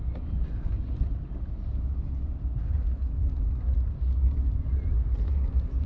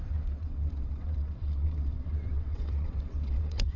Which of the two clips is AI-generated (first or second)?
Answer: second